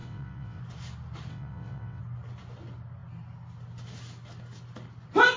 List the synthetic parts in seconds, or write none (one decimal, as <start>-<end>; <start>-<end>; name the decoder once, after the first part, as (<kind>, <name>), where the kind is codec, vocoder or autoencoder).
0.0-0.6 (vocoder, WaveNeXt); 1.3-2.0